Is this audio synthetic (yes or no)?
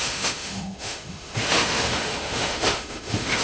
yes